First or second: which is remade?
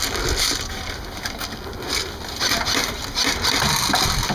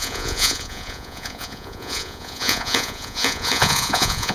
second